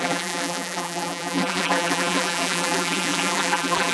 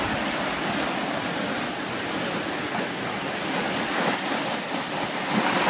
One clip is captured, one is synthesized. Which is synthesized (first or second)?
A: first